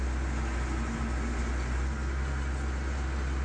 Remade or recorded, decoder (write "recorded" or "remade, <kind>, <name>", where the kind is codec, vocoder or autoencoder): recorded